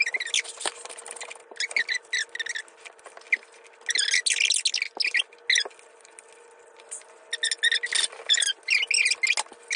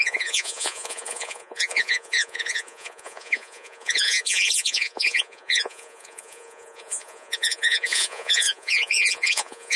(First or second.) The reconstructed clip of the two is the second